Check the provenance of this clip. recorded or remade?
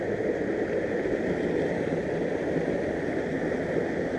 recorded